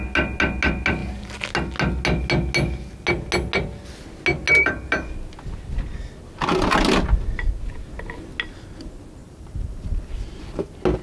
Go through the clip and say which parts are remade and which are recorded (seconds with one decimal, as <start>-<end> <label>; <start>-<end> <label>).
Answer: 0.0-9.2 recorded; 9.2-10.1 remade; 10.1-11.0 recorded